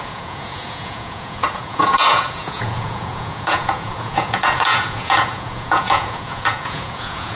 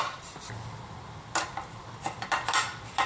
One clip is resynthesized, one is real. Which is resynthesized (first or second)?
first